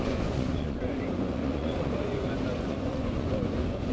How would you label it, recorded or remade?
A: remade